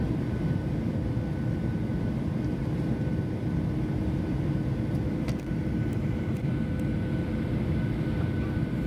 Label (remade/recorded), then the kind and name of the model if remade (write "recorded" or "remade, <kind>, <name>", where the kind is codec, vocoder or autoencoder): recorded